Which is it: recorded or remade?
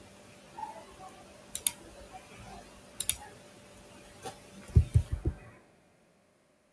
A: recorded